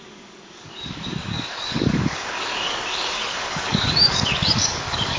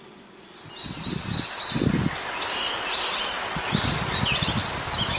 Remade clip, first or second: first